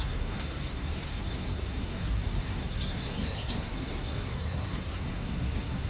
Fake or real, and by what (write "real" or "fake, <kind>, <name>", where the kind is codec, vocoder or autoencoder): fake, codec, SNAC